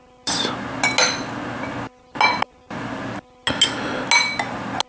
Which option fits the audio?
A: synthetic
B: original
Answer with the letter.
B